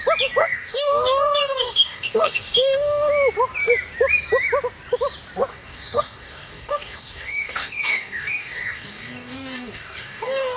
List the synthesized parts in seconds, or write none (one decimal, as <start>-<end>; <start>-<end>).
0.4-3.1; 5.5-10.6